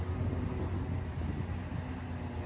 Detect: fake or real real